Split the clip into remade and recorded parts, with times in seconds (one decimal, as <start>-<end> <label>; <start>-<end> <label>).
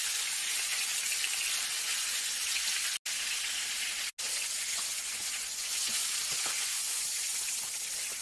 0.0-0.9 remade; 0.9-1.8 recorded; 1.8-2.7 remade; 2.7-4.4 recorded; 4.4-6.0 remade; 6.0-6.5 recorded; 6.5-7.3 remade; 7.3-8.2 recorded